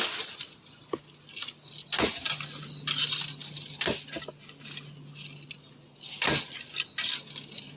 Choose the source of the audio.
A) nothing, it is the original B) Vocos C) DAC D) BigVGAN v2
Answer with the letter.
A